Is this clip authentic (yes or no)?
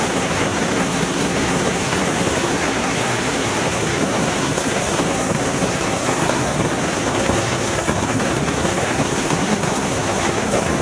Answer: no